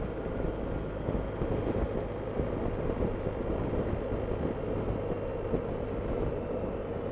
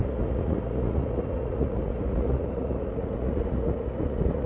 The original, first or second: first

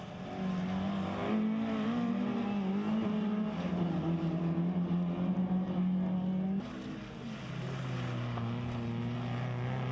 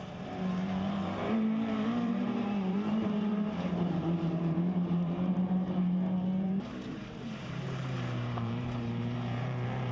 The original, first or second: first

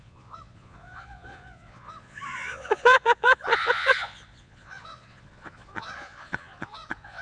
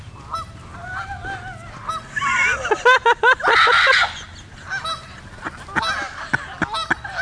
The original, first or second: second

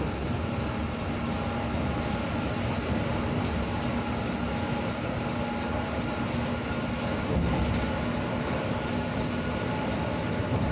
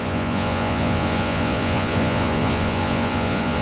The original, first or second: first